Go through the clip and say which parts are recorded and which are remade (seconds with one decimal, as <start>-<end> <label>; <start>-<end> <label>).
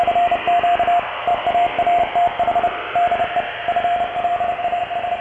0.0-5.2 recorded